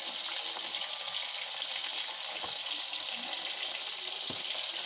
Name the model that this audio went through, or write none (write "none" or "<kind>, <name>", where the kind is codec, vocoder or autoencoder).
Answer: none